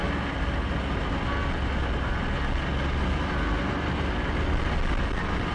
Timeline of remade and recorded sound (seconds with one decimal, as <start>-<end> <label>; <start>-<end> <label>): 0.0-5.5 recorded